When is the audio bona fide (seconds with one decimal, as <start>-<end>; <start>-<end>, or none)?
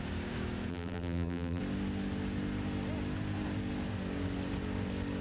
0.0-0.7; 1.6-5.2